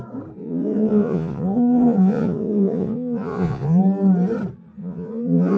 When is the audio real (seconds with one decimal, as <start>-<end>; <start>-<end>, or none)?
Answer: 0.0-0.4; 3.8-4.8

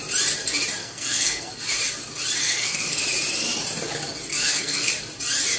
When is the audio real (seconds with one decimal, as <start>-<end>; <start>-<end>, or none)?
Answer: 0.0-0.8; 1.5-2.4; 3.0-4.3; 4.9-5.6

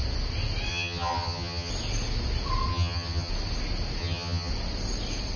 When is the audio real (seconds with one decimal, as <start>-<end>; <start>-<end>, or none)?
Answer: 0.0-0.7; 1.7-2.7; 3.3-4.0; 4.5-5.4

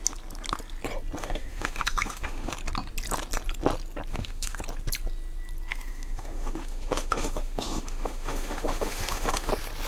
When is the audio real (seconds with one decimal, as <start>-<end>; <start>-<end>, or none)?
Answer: 0.0-1.2; 2.5-4.1; 4.6-5.7; 9.5-9.9

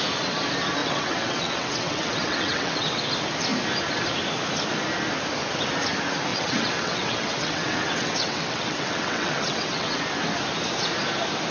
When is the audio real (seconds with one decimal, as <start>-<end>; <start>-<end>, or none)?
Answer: 0.0-0.8; 3.0-6.3; 10.0-11.5